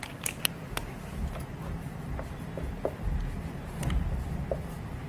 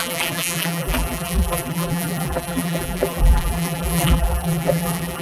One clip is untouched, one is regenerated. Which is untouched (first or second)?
first